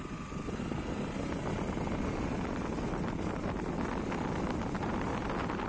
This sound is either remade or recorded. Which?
recorded